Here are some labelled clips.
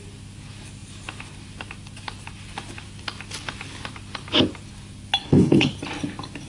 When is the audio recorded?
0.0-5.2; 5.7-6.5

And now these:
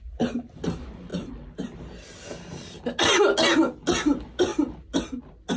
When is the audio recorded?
0.0-5.6

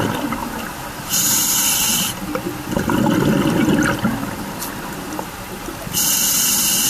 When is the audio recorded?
0.0-0.4; 1.2-6.9